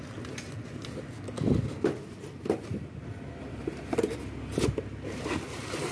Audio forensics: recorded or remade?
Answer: recorded